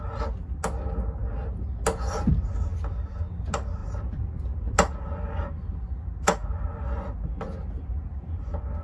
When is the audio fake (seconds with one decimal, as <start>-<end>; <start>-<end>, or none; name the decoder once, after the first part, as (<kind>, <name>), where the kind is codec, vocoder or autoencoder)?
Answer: 3.8-4.4 (vocoder, BigVGAN v2)